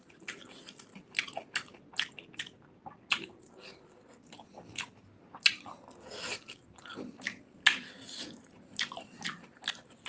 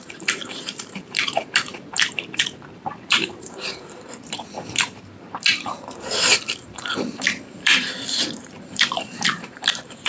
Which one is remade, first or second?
second